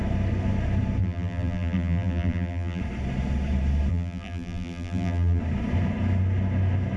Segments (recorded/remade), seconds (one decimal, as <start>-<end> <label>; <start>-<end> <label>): 0.0-1.0 recorded; 1.0-2.8 remade; 2.8-3.9 recorded; 3.9-5.4 remade; 5.4-7.0 recorded

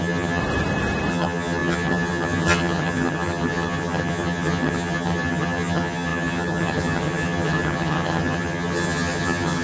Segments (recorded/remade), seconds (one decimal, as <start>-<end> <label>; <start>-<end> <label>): 0.0-0.4 remade; 0.4-1.1 recorded; 1.1-9.6 remade

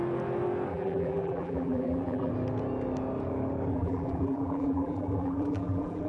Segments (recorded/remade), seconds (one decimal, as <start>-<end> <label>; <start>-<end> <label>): 0.0-0.7 recorded; 0.7-2.3 remade; 2.3-3.7 recorded; 3.7-6.1 remade

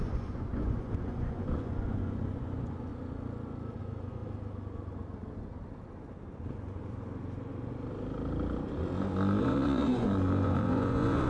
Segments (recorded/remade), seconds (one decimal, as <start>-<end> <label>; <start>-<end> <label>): 0.0-2.9 remade; 2.9-3.8 recorded; 3.8-4.2 remade; 4.2-9.4 recorded; 9.4-11.3 remade

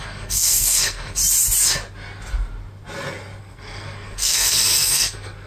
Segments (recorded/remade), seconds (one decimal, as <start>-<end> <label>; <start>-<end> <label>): 0.0-1.2 remade; 1.2-3.4 recorded; 3.4-5.5 remade

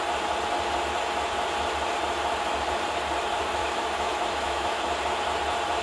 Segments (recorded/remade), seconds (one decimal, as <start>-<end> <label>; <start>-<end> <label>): 0.0-3.6 recorded; 3.6-4.8 remade; 4.8-5.8 recorded